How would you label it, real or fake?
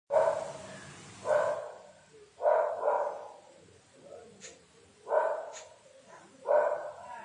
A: real